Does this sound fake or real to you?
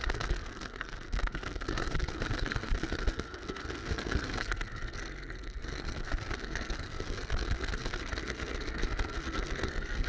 fake